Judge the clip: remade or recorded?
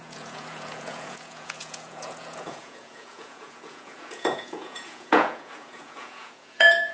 remade